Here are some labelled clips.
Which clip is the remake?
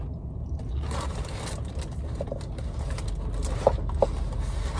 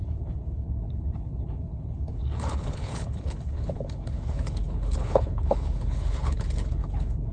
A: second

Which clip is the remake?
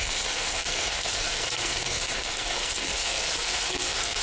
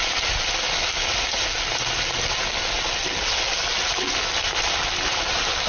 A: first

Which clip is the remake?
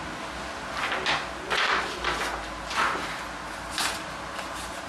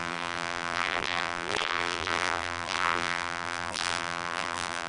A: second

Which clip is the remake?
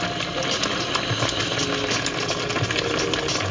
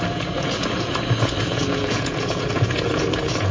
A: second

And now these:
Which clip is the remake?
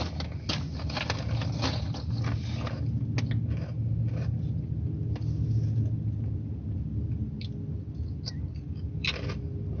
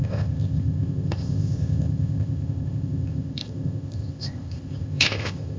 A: second